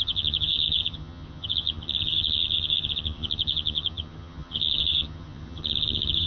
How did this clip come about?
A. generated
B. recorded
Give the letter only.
A